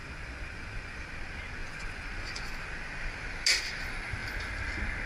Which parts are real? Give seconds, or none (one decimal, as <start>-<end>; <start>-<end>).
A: 1.0-1.6; 2.5-5.1